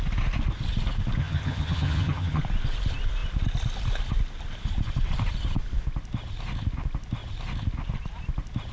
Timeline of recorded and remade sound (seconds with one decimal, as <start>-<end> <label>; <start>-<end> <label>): 0.0-1.2 recorded; 1.2-2.4 remade; 2.4-8.7 recorded